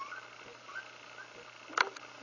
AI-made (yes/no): no